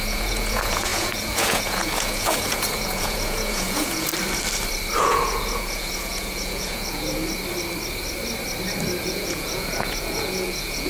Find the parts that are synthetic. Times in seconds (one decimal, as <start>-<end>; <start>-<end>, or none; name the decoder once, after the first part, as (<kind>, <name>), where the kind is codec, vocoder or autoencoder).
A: 0.0-4.1 (vocoder, Vocos); 5.0-7.2; 9.0-10.9